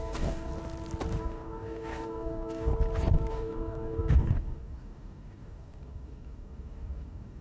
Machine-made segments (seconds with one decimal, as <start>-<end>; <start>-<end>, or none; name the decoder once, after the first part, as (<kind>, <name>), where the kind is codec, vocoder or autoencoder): 0.0-0.5 (codec, DAC); 1.2-2.7; 3.3-7.4